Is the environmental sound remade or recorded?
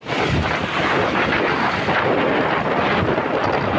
recorded